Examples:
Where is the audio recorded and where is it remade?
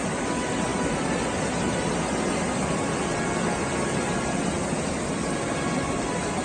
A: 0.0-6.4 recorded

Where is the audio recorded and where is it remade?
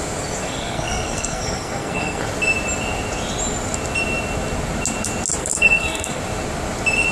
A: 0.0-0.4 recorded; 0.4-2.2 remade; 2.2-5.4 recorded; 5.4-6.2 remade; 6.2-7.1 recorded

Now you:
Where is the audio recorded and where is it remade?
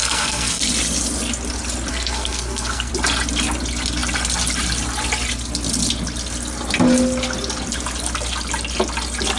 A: 0.0-0.6 remade; 0.6-1.9 recorded; 1.9-2.9 remade; 2.9-9.4 recorded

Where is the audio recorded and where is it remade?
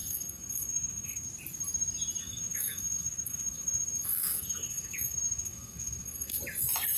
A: 0.0-1.3 remade; 1.3-2.2 recorded; 2.2-6.4 remade; 6.4-7.0 recorded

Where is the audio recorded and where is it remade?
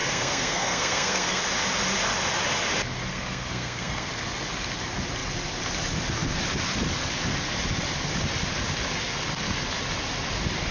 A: 0.0-1.4 remade; 1.4-3.1 recorded; 3.1-4.1 remade; 4.1-10.7 recorded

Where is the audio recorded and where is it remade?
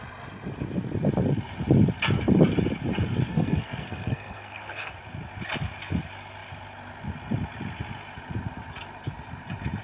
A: 0.0-3.3 recorded; 3.3-4.9 remade; 4.9-9.8 recorded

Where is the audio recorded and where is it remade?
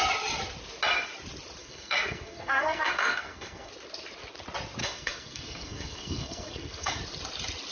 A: 0.0-1.6 recorded; 1.6-3.7 remade; 3.7-4.8 recorded; 4.8-7.0 remade; 7.0-7.7 recorded